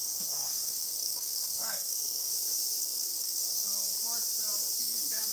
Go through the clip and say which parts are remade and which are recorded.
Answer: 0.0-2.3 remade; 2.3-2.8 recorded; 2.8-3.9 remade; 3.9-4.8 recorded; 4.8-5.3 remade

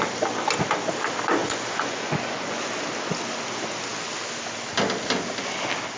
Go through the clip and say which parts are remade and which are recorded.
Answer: 0.0-1.4 recorded; 1.4-2.6 remade; 2.6-6.0 recorded

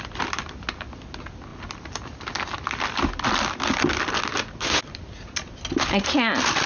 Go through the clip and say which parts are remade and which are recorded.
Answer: 0.0-6.7 recorded

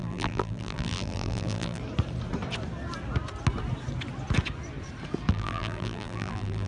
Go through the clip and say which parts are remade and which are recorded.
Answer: 0.0-1.8 remade; 1.8-5.3 recorded; 5.3-6.7 remade

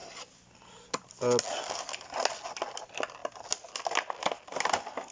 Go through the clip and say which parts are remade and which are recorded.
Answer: 0.0-5.1 recorded

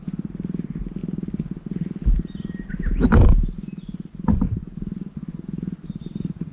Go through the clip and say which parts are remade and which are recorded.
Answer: 0.0-6.5 recorded